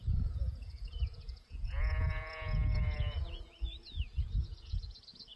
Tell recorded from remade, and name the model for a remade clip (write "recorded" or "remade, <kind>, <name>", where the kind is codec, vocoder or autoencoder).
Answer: remade, vocoder, Vocos